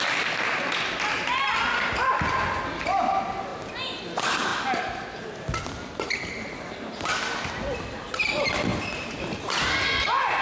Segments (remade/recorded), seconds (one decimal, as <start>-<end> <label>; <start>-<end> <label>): 0.0-10.4 recorded